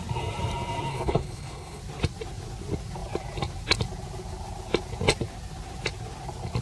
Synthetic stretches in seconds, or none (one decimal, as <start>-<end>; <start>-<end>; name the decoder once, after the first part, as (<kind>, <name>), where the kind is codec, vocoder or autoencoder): 0.9-1.8 (codec, HILCodec)